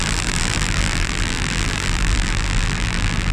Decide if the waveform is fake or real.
fake